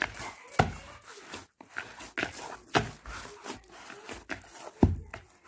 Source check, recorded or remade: recorded